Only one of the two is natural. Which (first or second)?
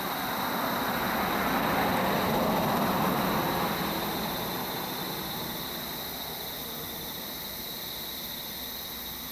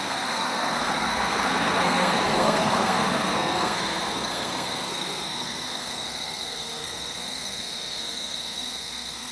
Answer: first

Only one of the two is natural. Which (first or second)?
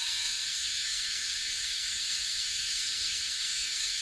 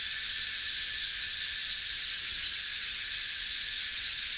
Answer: second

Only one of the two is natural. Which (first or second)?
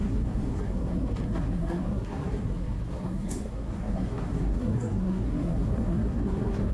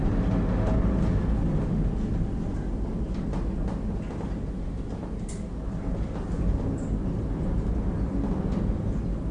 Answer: second